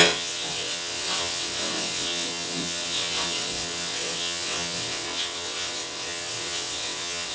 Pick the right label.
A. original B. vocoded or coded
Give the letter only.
B